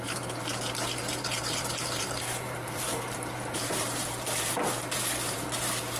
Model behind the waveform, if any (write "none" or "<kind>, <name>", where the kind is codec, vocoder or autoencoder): vocoder, BigVGAN v2